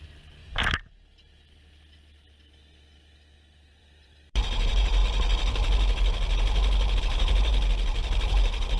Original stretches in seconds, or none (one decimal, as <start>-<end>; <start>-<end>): 0.4-3.8; 5.0-7.0; 7.5-8.3